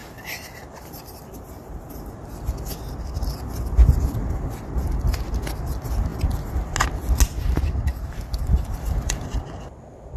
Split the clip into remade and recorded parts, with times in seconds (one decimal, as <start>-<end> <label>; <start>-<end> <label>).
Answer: 0.0-2.3 remade; 2.3-7.9 recorded; 7.9-9.4 remade; 9.4-10.2 recorded